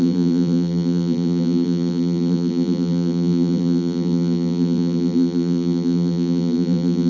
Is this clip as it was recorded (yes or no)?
no